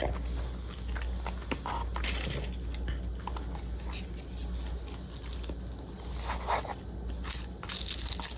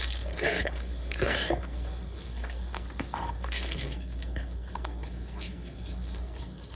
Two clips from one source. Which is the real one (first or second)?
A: first